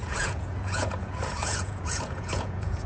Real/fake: fake